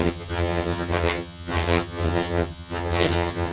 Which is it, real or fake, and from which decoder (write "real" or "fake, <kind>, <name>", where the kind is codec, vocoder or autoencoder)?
fake, vocoder, HiFi-GAN